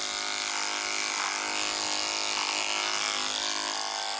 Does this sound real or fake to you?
real